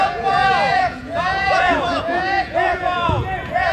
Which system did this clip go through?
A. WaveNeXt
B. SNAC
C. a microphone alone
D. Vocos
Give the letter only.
D